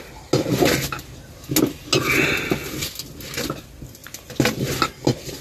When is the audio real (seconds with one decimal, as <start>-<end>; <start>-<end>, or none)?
0.0-5.4